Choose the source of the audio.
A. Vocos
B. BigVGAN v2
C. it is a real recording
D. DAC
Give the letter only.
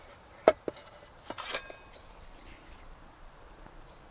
C